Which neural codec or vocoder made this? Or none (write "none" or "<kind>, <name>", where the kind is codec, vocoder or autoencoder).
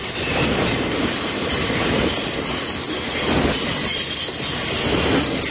none